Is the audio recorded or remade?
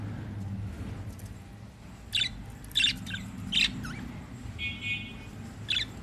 recorded